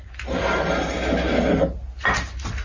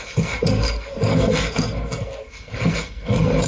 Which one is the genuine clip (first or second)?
first